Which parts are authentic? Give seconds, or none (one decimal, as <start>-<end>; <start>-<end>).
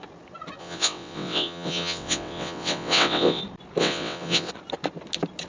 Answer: 0.0-0.6; 3.4-3.8; 4.5-5.5